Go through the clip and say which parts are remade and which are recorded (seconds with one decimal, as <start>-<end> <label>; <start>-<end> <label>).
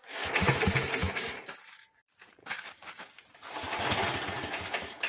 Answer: 0.0-0.6 remade; 0.6-1.0 recorded; 1.0-1.6 remade; 1.6-2.4 recorded; 2.4-3.0 remade; 3.0-5.1 recorded